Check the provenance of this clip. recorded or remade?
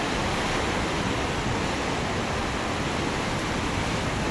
recorded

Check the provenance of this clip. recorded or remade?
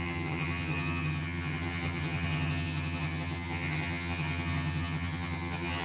remade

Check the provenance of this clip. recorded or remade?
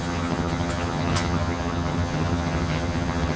remade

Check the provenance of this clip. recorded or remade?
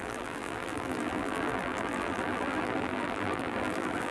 remade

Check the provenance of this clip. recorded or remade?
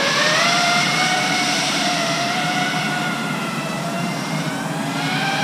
remade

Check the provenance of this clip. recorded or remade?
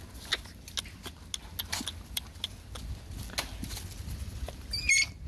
recorded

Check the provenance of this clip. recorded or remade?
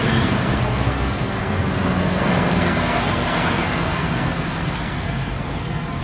remade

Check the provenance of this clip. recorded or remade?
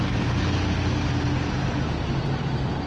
recorded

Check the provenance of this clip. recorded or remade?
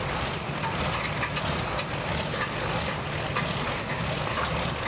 recorded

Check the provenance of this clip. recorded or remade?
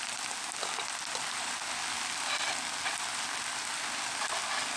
recorded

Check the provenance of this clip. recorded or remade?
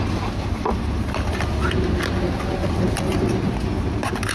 recorded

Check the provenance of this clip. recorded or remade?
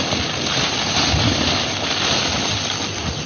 recorded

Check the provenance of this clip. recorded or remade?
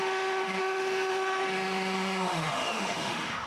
remade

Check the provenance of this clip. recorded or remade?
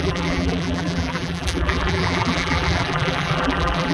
remade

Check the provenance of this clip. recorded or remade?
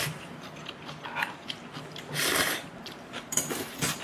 remade